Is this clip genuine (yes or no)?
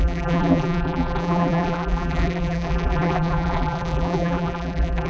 no